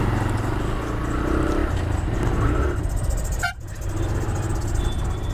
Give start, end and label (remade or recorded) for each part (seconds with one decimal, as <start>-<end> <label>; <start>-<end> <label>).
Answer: 0.0-5.3 recorded